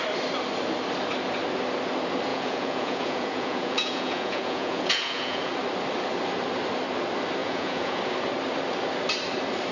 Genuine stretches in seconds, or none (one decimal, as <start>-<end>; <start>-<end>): 0.0-2.3; 5.5-7.4; 8.0-9.7